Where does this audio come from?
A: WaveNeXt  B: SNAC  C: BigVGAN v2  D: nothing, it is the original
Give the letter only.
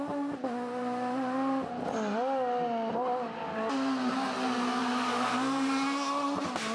D